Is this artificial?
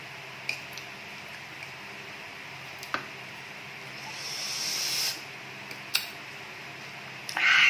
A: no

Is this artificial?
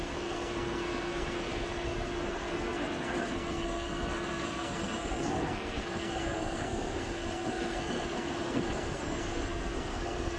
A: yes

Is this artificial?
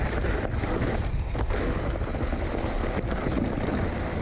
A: yes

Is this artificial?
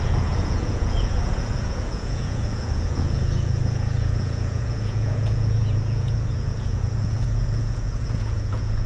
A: yes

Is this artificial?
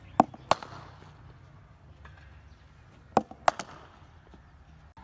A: no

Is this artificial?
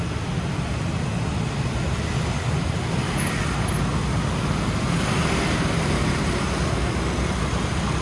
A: no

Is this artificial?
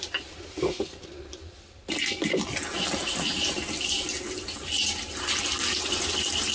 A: no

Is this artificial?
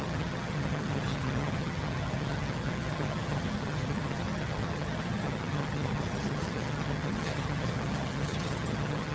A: yes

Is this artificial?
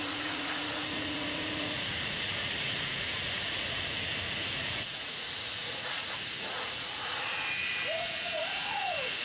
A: yes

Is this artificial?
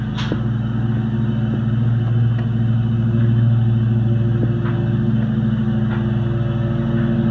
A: no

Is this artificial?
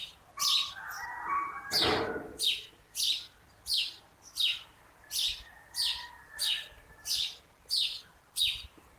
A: no